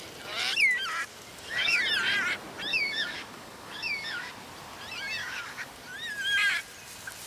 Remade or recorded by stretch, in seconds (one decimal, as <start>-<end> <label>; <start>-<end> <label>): 0.0-1.1 recorded; 1.1-1.8 remade; 1.8-2.7 recorded; 2.7-4.3 remade; 4.3-5.2 recorded; 5.2-5.7 remade; 5.7-7.3 recorded